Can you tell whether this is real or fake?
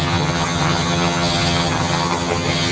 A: fake